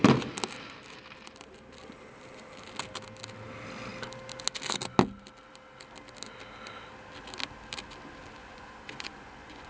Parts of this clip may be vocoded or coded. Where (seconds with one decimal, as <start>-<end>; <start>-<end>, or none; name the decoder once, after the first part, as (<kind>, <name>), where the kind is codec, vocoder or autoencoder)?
8.4-9.7 (vocoder, Vocos)

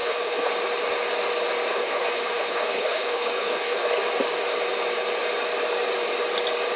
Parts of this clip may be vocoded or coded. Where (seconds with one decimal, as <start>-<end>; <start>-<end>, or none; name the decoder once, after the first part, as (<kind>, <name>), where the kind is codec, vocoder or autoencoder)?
0.0-0.5 (codec, HILCodec); 1.7-4.0

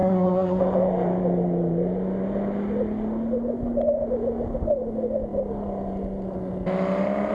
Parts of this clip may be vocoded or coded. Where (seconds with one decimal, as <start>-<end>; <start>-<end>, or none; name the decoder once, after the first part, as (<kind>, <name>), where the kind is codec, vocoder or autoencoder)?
0.0-0.6 (codec, SNAC)

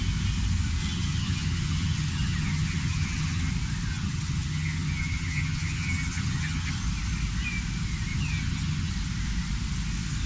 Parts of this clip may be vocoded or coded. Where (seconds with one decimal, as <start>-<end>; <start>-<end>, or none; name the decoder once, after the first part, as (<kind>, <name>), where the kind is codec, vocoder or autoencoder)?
0.8-3.5 (vocoder, HiFi-GAN); 3.9-6.8; 8.1-8.9

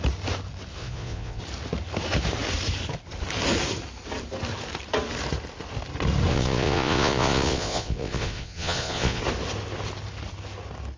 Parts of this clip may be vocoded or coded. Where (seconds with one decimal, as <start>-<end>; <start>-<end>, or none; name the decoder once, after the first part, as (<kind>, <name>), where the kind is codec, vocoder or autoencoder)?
0.8-1.4 (vocoder, Vocos); 6.3-9.2

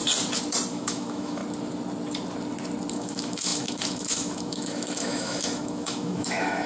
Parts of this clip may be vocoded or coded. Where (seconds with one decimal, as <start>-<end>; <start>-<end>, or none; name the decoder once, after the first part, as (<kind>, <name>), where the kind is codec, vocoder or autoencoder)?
0.7-1.4 (autoencoder, DAC-VAE); 2.9-6.7